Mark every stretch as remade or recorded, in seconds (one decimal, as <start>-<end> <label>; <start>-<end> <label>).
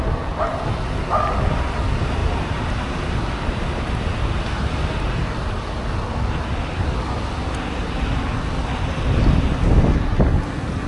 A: 0.0-2.2 recorded; 2.2-4.0 remade; 4.0-10.9 recorded